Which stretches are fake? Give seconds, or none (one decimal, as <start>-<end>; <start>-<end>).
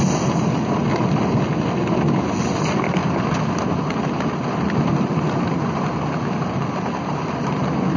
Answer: none